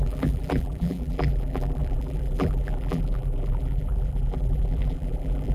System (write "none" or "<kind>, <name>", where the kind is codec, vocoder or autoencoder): vocoder, BigVGAN v2